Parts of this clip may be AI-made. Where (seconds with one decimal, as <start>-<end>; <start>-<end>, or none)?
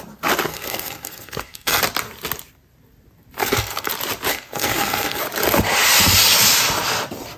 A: 0.5-1.8; 3.4-3.9; 4.3-5.2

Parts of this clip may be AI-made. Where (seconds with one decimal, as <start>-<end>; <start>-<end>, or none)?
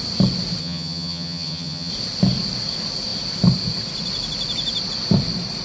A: 0.6-1.9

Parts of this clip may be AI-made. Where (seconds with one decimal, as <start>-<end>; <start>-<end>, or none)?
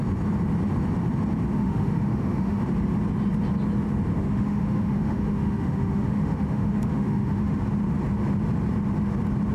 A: 1.6-2.6; 4.1-7.6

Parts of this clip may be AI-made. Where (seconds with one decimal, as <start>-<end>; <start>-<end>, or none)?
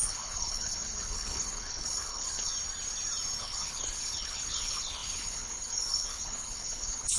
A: 0.0-2.5; 3.4-7.2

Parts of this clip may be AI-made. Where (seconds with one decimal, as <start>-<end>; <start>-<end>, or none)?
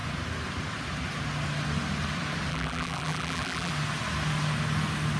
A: 2.5-3.7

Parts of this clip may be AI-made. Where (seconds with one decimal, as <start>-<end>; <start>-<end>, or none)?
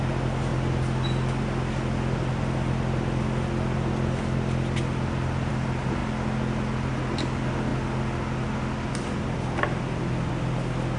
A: none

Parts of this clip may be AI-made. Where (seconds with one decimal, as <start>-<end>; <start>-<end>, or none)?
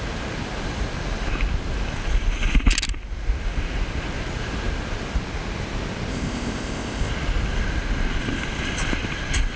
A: 6.1-7.1